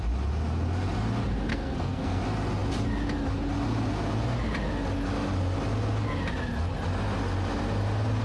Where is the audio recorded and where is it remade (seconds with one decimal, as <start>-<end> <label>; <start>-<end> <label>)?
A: 0.0-1.5 recorded; 1.5-2.2 remade; 2.2-8.2 recorded